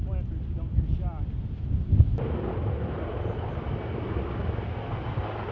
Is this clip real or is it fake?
real